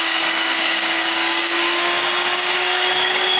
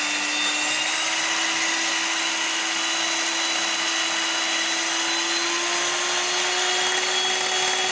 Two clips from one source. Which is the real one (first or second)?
second